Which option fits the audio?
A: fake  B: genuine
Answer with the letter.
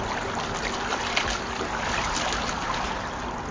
B